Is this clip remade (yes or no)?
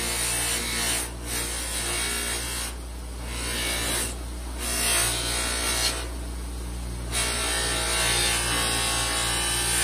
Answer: no